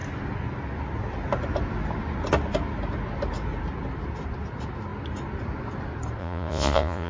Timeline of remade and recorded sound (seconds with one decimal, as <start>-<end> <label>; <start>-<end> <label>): 0.0-6.2 recorded; 6.2-7.1 remade